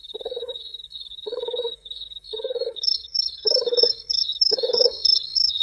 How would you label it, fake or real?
fake